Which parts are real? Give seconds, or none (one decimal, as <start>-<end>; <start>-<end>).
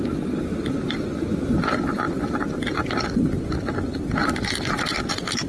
2.8-4.3